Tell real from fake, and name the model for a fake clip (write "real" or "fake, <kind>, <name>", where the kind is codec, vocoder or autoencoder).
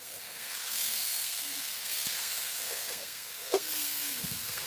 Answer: fake, codec, SNAC